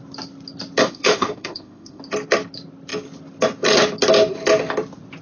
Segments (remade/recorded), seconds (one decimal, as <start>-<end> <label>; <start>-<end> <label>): 0.0-0.8 recorded; 0.8-2.0 remade; 2.0-5.2 recorded